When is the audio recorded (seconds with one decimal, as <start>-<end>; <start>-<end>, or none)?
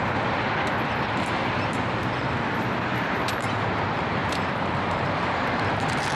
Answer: 0.0-4.2; 5.5-6.2